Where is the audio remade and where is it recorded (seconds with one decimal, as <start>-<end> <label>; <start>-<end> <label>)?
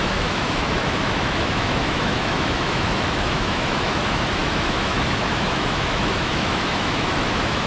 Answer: 0.0-7.7 remade